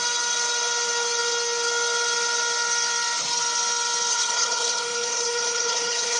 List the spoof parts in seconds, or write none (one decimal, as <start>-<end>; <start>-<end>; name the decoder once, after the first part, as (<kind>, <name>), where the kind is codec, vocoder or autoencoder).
4.1-6.2 (codec, HILCodec)